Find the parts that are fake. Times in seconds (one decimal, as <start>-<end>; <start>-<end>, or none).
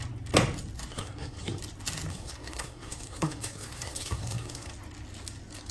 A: 0.9-1.6; 2.1-4.7